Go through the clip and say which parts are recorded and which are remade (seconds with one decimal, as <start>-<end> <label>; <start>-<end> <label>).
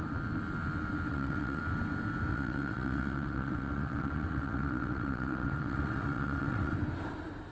0.0-1.1 recorded; 1.1-1.6 remade; 1.6-2.3 recorded; 2.3-6.7 remade; 6.7-7.5 recorded